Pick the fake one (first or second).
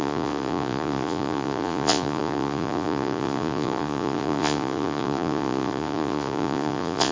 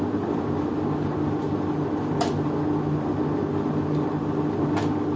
first